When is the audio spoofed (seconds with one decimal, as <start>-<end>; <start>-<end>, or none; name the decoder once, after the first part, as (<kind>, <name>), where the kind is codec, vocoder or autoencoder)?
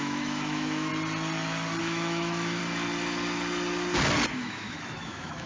0.0-0.9 (autoencoder, DAC-VAE); 1.8-2.6; 4.3-5.5